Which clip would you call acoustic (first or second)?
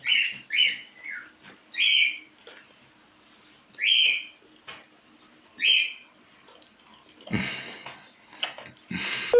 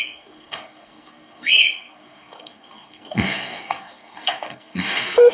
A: first